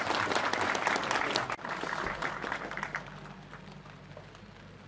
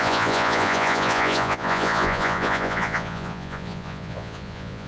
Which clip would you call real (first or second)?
first